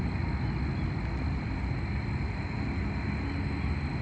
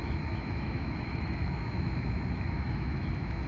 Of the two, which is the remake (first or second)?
second